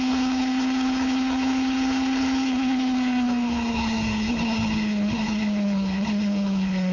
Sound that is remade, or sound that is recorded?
remade